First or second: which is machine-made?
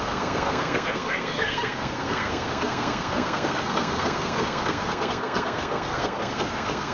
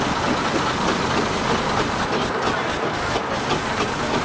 first